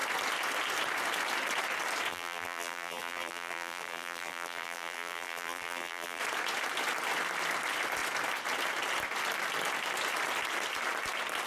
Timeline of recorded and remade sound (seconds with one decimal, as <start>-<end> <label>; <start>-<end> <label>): 0.0-2.1 recorded; 2.1-6.2 remade; 6.2-11.5 recorded

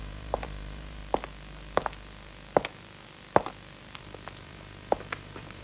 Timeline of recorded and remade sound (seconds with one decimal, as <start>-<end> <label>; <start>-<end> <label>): 0.0-1.0 remade; 1.0-4.4 recorded; 4.4-5.6 remade

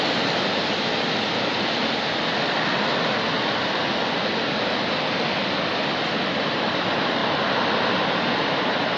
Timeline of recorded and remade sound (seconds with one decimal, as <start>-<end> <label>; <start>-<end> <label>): 0.0-9.0 recorded